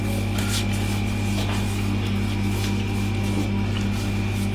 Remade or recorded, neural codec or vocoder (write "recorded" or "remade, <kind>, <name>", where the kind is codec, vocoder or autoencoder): recorded